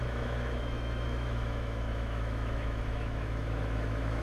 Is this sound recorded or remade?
remade